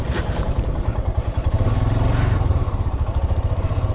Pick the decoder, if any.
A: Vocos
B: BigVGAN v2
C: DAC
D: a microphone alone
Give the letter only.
B